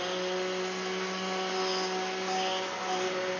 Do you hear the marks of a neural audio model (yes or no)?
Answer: no